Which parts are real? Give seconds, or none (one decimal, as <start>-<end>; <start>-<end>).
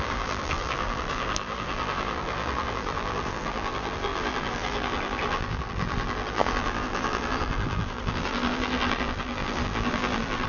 none